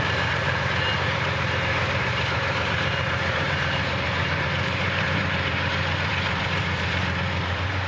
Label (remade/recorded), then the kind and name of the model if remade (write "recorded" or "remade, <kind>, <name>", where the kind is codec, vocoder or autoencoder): remade, vocoder, BigVGAN v2